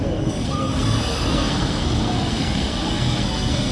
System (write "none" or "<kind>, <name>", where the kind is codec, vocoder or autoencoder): codec, SNAC